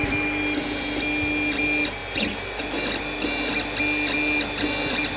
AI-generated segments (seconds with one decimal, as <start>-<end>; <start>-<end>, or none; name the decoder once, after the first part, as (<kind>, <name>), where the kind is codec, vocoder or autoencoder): none

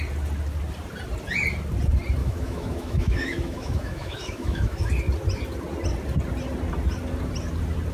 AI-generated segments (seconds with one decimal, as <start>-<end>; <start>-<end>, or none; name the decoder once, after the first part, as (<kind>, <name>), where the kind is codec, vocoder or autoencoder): 2.2-4.9 (autoencoder, DAC-VAE)

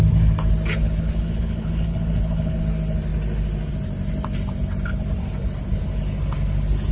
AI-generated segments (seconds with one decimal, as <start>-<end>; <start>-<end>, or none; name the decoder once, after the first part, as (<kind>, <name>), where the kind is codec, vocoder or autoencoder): 0.8-2.6 (codec, HILCodec)

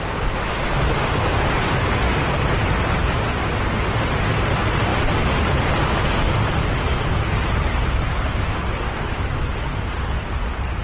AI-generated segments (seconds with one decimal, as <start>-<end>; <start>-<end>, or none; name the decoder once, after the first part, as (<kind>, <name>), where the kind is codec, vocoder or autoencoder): none

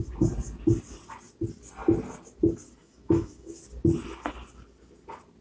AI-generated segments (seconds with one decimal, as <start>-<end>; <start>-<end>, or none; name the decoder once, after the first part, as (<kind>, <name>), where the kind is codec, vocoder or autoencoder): 2.8-3.6 (autoencoder, DAC-VAE)

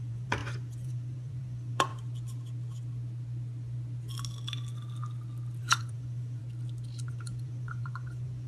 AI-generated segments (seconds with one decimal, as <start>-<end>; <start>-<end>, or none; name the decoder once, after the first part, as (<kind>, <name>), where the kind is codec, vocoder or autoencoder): 0.0-1.9 (vocoder, Vocos); 5.6-6.4; 7.1-8.5

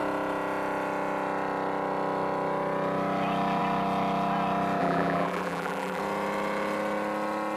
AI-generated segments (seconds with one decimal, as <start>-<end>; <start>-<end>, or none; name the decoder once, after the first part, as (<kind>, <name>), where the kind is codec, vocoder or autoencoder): 4.8-6.0 (vocoder, BigVGAN v2)